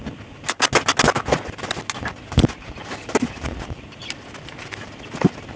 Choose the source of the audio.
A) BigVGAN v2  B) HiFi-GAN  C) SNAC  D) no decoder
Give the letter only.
D